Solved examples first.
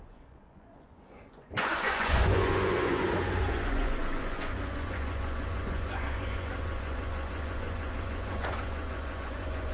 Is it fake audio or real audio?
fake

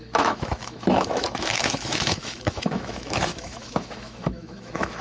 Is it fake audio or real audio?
fake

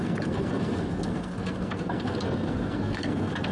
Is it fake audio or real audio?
fake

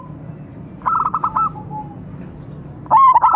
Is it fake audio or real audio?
real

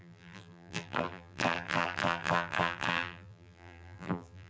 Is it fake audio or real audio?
fake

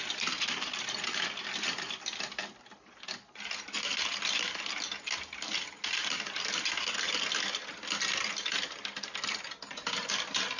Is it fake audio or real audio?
real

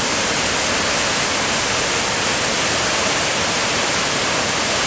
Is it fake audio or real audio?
real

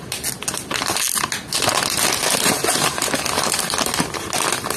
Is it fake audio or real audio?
real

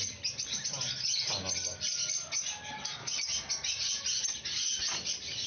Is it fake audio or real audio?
real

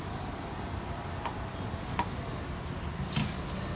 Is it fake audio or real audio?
real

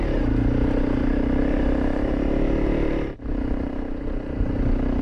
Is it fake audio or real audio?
fake